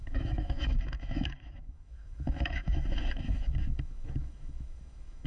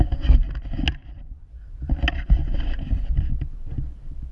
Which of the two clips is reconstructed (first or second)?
first